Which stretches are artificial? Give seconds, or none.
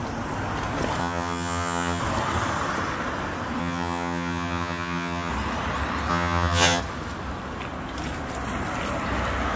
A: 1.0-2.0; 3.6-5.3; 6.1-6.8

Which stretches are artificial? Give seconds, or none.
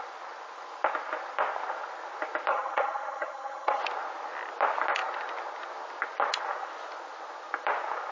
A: 2.5-3.8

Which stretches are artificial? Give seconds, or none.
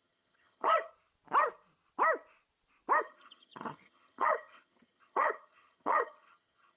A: 0.0-0.9; 3.0-6.8